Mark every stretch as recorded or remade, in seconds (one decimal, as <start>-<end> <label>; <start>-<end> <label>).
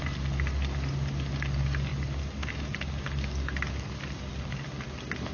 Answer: 0.0-5.3 recorded